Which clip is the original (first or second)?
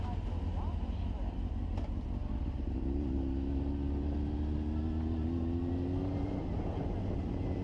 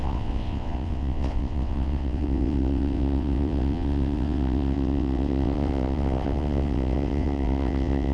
first